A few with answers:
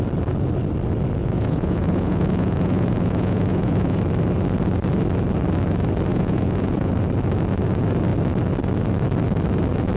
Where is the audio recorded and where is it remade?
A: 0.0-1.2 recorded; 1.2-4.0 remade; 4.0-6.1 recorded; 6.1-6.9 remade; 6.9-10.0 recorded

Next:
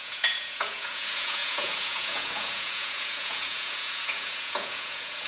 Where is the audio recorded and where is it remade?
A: 0.0-5.3 remade

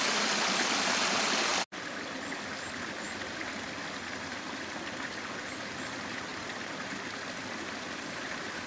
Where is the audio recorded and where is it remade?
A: 0.0-8.7 recorded

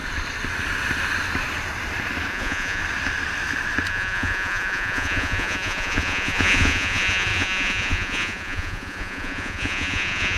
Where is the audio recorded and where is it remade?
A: 0.0-2.3 recorded; 2.3-2.8 remade; 2.8-3.9 recorded; 3.9-10.4 remade

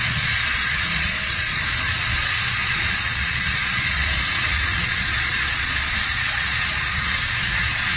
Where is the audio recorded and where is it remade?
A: 0.0-8.0 remade

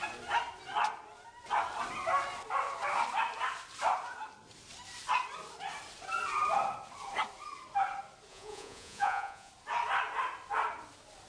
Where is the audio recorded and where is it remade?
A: 0.0-8.3 recorded; 8.3-9.5 remade; 9.5-11.3 recorded

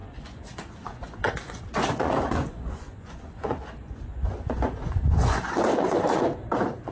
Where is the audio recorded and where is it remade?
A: 0.0-6.9 remade

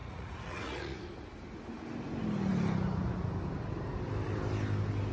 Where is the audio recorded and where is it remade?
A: 0.0-1.0 remade; 1.0-5.1 recorded